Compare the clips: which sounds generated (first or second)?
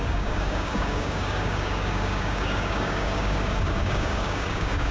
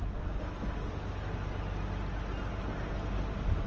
first